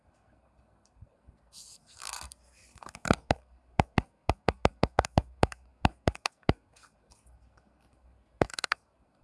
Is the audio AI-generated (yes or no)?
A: yes